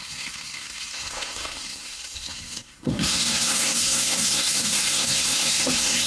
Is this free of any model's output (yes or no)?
no